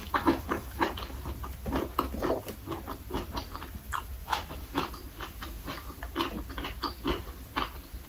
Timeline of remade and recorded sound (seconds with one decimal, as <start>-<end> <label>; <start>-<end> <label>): 0.0-0.8 remade; 0.8-4.2 recorded; 4.2-4.9 remade; 4.9-8.1 recorded